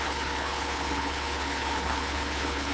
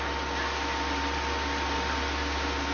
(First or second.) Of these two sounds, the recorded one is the second